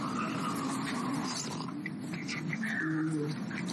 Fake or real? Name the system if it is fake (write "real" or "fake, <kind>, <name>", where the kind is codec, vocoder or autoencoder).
real